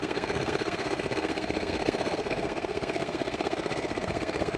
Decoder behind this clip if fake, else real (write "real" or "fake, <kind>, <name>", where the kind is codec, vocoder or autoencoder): fake, codec, SNAC